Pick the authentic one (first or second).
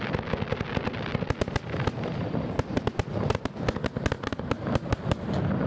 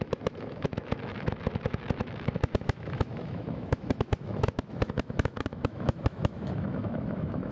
first